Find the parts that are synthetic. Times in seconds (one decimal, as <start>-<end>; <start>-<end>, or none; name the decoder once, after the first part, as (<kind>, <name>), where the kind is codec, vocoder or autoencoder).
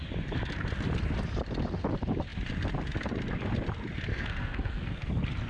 4.1-5.1 (codec, SNAC)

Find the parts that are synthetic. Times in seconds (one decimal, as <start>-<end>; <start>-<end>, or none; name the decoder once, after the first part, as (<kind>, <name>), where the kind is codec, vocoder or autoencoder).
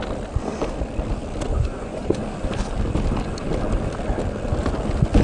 1.5-2.2 (vocoder, Vocos)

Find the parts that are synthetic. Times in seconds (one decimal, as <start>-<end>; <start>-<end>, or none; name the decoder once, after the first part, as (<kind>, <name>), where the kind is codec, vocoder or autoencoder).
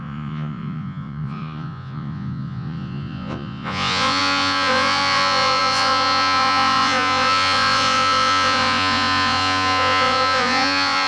0.0-11.1 (vocoder, Vocos)